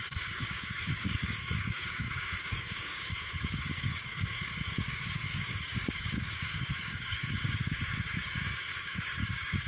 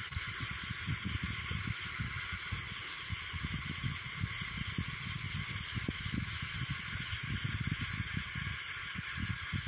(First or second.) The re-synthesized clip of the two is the first